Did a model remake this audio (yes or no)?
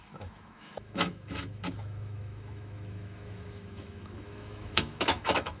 yes